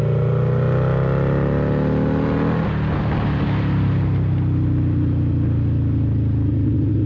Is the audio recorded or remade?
recorded